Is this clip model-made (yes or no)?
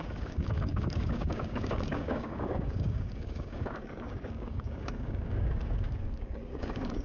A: yes